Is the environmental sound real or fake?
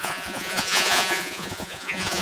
fake